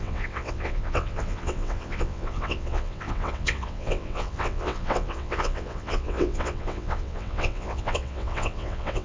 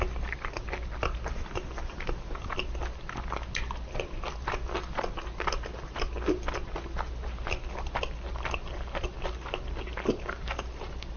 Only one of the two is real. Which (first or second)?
second